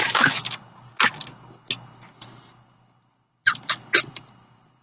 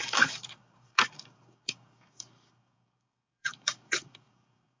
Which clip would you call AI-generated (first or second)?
second